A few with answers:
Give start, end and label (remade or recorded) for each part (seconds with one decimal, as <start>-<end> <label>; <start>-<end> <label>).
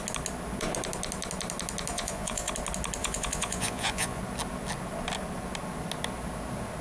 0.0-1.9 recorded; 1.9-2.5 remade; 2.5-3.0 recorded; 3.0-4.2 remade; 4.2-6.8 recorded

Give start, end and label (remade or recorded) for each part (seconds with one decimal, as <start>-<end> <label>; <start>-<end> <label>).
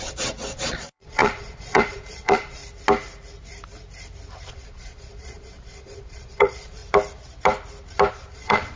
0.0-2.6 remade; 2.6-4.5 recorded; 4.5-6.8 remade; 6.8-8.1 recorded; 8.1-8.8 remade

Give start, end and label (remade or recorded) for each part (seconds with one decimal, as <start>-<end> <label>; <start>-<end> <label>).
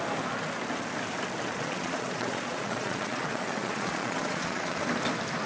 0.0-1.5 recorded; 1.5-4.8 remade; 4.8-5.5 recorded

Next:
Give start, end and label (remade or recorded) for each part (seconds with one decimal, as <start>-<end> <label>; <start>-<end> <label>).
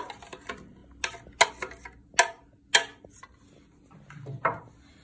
0.0-5.0 recorded